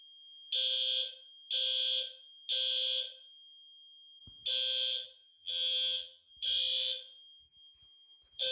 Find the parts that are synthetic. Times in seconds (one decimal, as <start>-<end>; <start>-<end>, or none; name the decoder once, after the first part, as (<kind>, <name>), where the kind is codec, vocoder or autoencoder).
5.3-6.3 (vocoder, BigVGAN v2)